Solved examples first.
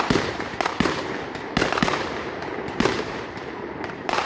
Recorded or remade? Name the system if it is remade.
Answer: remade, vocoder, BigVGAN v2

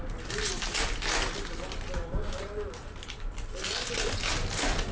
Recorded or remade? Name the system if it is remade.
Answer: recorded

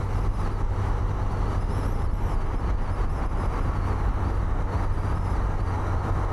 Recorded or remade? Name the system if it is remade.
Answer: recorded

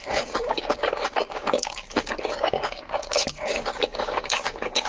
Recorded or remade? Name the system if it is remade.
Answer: remade, codec, DAC